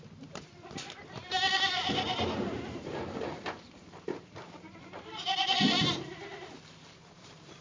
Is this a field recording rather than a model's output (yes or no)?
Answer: no